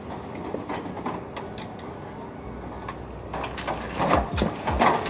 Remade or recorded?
recorded